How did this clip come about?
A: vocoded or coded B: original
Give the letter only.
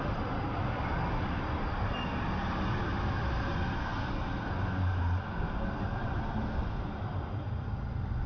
B